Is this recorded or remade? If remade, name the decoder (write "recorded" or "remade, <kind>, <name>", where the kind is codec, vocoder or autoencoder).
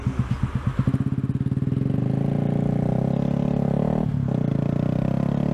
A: recorded